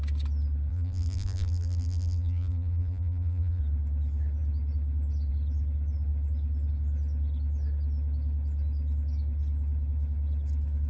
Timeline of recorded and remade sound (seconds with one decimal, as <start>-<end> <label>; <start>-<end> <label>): 0.0-0.7 recorded; 0.7-3.6 remade; 3.6-10.9 recorded